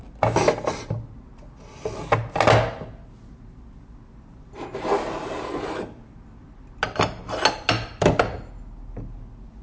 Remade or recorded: recorded